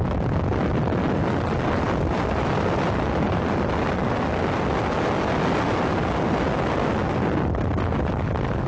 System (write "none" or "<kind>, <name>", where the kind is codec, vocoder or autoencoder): none